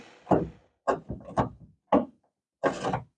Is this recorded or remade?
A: recorded